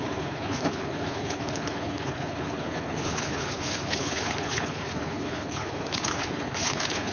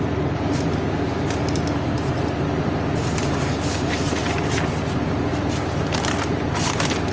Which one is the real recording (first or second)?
second